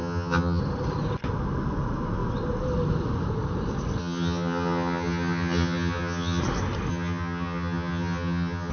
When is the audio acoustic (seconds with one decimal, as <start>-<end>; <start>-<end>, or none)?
0.6-4.0; 6.4-6.9